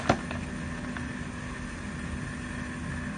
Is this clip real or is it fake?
real